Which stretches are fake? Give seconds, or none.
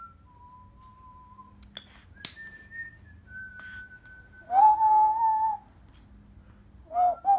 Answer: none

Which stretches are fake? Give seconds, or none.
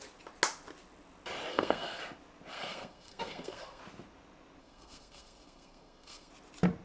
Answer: 1.5-2.0 (codec, SNAC); 2.5-3.8; 4.6-6.3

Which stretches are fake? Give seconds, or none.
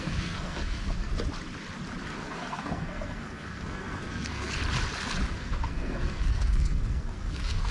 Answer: 0.0-1.1 (codec, SNAC); 2.0-4.6; 5.3-7.7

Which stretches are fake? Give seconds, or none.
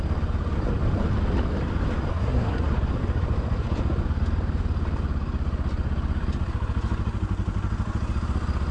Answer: 2.1-2.7 (codec, SNAC)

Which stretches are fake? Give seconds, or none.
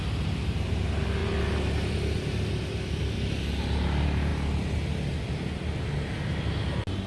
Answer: none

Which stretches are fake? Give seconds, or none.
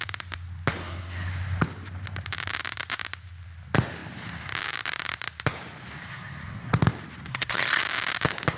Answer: 0.8-1.3 (codec, SNAC); 6.1-6.7; 7.3-7.8